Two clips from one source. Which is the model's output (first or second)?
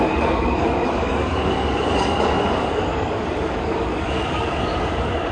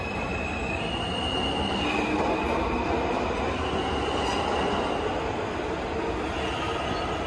first